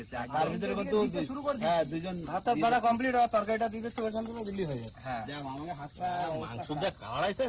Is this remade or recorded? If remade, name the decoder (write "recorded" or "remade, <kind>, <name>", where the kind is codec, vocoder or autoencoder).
recorded